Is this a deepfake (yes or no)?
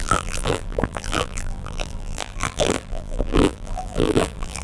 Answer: yes